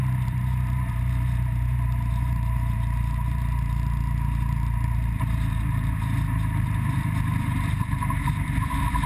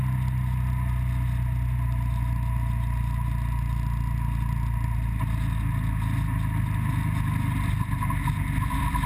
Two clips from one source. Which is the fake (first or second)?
first